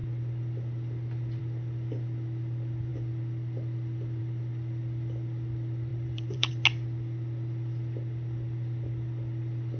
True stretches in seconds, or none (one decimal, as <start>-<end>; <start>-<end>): 0.0-5.9; 6.5-9.8